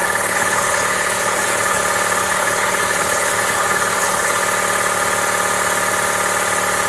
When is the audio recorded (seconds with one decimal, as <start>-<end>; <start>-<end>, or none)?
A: 1.8-2.2; 4.4-6.9